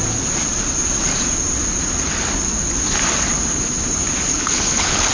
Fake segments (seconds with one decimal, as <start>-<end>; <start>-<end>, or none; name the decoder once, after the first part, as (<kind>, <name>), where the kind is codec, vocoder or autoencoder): 4.3-5.1 (codec, HILCodec)